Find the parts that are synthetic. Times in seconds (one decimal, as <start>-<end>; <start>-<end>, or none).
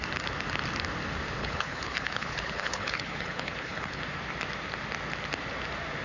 1.4-4.0